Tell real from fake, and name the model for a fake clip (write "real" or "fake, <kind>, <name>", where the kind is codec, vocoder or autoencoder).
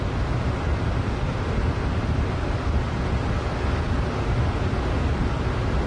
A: real